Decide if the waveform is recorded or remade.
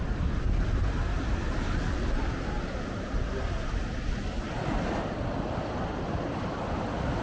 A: recorded